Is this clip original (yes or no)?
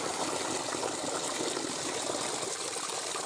yes